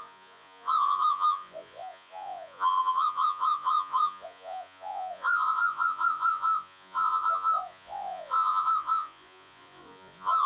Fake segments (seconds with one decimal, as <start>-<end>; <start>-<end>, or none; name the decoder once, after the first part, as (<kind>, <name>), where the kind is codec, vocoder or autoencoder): 0.0-10.5 (vocoder, Vocos)